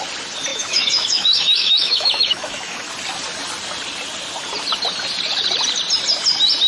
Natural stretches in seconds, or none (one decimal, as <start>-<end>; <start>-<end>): 0.0-0.5; 2.9-6.7